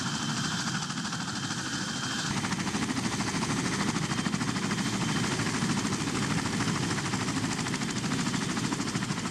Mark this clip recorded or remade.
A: recorded